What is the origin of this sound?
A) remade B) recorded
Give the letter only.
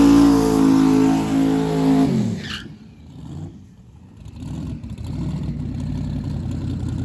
B